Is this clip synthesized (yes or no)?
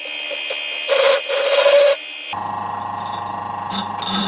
no